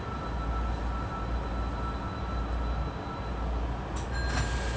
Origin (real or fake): real